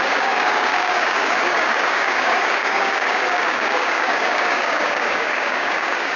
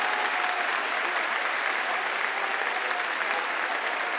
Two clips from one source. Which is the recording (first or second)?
second